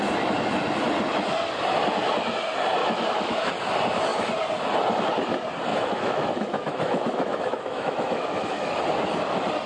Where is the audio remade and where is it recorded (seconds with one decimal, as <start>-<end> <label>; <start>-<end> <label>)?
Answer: 0.0-2.8 recorded; 2.8-3.5 remade; 3.5-5.7 recorded; 5.7-8.8 remade; 8.8-9.7 recorded